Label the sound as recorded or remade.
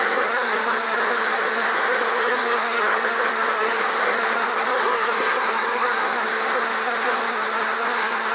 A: remade